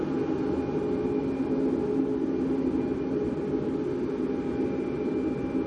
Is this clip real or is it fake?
real